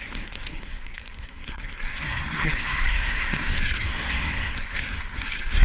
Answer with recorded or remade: remade